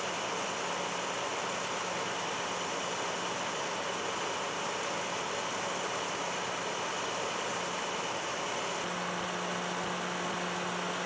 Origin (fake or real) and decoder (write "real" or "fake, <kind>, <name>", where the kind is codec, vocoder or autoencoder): real